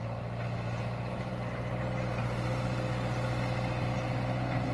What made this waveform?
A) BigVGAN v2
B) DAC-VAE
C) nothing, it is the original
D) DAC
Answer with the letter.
C